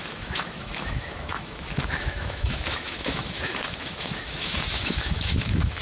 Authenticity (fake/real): fake